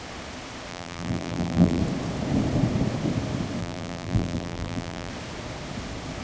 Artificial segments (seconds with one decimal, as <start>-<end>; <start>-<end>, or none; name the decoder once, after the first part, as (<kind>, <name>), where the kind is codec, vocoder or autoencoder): 0.7-1.8 (vocoder, BigVGAN v2); 3.6-5.1